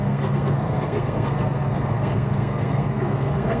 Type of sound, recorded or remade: remade